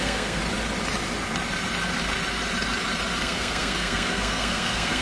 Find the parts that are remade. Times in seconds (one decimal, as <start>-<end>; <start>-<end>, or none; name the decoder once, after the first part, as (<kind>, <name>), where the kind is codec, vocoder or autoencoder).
0.0-0.4 (codec, SNAC); 3.2-5.0